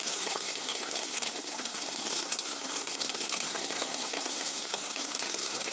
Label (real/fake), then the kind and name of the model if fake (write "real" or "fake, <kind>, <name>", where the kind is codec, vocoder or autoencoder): fake, codec, SNAC